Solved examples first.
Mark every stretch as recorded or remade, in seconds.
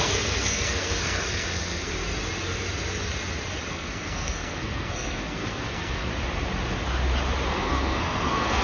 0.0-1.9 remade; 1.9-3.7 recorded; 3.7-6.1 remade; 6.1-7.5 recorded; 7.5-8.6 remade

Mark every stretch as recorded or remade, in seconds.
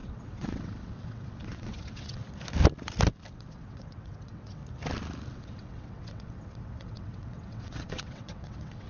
0.0-2.2 remade; 2.2-3.3 recorded; 3.3-4.6 remade; 4.6-5.3 recorded; 5.3-8.9 remade